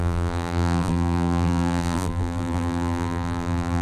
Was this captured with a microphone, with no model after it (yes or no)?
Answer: no